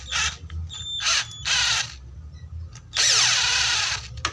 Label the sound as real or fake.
real